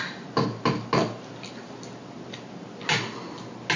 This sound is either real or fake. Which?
real